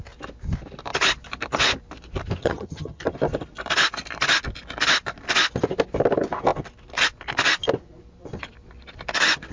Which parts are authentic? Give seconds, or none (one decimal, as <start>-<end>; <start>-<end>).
0.0-2.4; 3.0-9.5